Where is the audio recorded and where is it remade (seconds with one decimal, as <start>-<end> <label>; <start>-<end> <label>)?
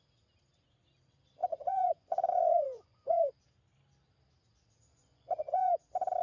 0.0-1.4 recorded; 1.4-3.3 remade; 3.3-4.9 recorded; 4.9-5.7 remade; 5.7-6.2 recorded